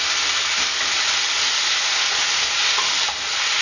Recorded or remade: recorded